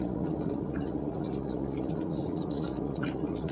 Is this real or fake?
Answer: fake